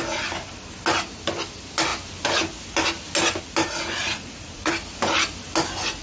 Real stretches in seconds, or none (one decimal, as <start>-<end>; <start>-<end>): 0.0-4.0; 4.7-6.0